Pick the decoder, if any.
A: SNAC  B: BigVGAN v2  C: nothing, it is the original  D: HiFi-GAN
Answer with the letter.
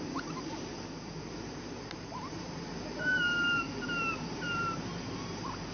B